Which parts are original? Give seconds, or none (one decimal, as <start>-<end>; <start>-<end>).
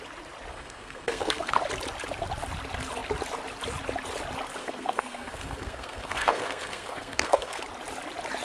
0.0-0.5; 1.5-4.6; 7.6-8.4